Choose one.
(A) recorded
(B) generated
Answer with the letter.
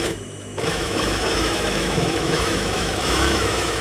B